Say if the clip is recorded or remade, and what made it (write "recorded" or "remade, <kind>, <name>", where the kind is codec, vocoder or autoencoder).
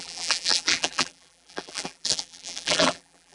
remade, vocoder, BigVGAN v2